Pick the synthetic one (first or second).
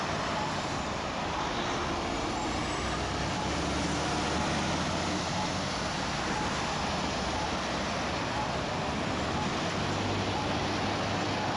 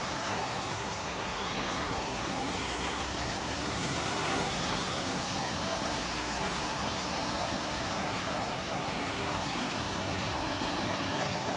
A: second